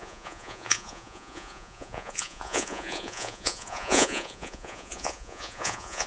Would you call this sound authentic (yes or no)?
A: no